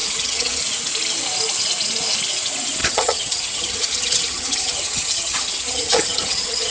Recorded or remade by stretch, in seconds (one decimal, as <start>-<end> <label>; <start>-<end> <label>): 0.0-0.6 remade; 0.6-2.8 recorded; 2.8-6.7 remade